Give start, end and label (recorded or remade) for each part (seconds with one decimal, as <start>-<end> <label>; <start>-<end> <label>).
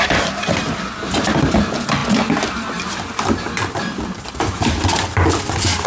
0.0-5.9 recorded